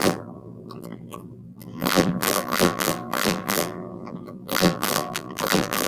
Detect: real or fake fake